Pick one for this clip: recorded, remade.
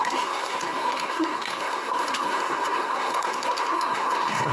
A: remade